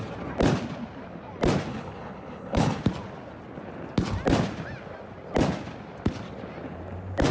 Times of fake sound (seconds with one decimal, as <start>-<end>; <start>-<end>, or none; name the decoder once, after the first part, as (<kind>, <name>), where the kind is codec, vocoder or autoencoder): 1.7-2.8 (codec, HILCodec)